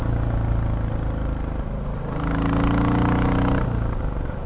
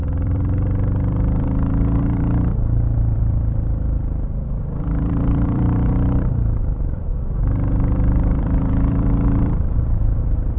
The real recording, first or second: first